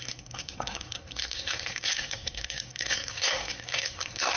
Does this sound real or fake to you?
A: fake